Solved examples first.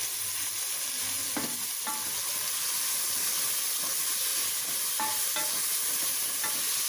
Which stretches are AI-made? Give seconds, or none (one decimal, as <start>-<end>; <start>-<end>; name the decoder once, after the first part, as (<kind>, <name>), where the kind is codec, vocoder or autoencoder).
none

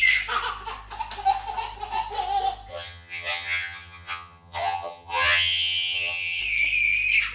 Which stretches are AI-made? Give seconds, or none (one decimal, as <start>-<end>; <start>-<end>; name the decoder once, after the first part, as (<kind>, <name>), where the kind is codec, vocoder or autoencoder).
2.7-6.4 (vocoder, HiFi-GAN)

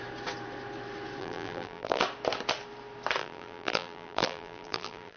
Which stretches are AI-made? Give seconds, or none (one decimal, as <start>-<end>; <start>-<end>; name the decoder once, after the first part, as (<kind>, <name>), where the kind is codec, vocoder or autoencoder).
1.2-2.0 (vocoder, BigVGAN v2); 3.2-5.2